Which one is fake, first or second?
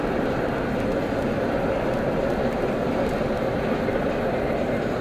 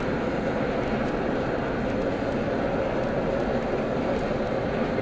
first